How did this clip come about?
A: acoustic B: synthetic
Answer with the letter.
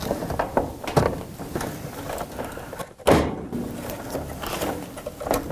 A